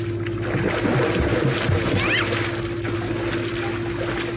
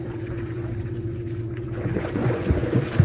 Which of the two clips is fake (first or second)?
second